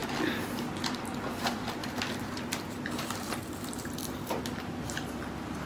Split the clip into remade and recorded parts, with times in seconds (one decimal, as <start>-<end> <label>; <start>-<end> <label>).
0.0-1.8 recorded; 1.8-4.4 remade; 4.4-5.7 recorded